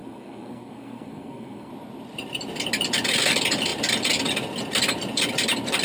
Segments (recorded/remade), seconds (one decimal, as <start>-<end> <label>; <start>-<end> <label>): 0.0-1.7 remade; 1.7-5.8 recorded